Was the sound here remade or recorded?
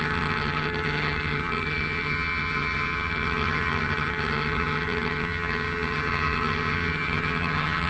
remade